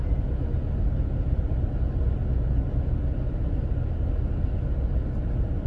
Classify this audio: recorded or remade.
recorded